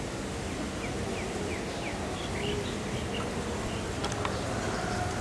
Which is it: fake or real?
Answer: real